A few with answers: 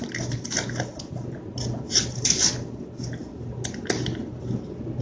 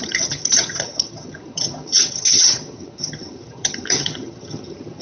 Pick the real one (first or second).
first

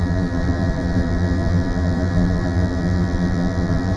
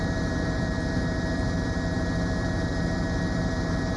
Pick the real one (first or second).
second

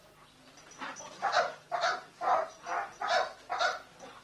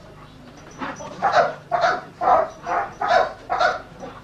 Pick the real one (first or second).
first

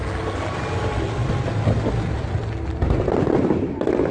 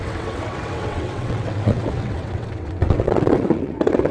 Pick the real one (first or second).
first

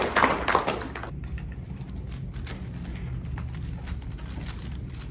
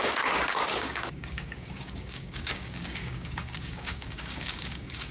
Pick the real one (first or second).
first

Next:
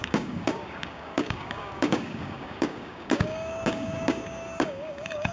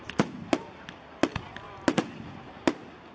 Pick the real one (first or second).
second